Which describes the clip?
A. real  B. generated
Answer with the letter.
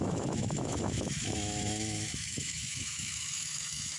B